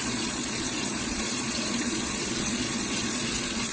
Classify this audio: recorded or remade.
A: remade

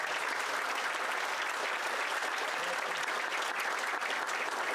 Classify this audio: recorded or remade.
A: recorded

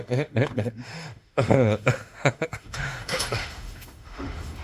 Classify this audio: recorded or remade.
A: remade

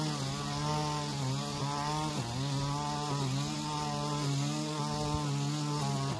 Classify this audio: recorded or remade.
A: recorded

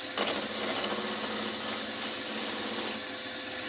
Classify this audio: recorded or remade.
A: recorded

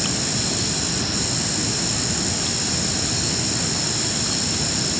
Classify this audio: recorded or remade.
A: recorded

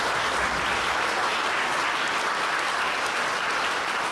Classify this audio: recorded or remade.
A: recorded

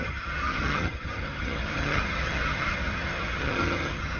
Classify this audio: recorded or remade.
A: remade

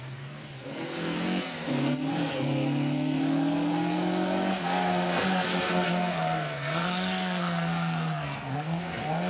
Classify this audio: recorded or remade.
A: remade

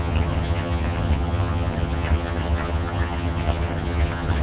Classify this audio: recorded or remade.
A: remade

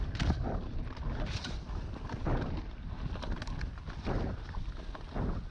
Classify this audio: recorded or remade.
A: recorded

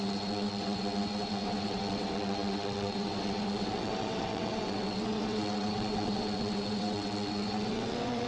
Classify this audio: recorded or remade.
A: remade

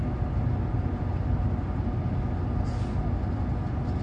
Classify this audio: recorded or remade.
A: recorded